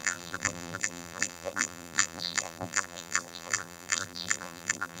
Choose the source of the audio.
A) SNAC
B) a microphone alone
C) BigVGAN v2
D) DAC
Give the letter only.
C